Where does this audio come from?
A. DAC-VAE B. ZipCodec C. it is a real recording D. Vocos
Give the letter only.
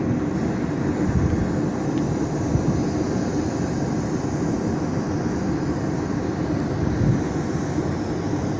C